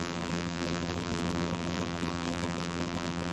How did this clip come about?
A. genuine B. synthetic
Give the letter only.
B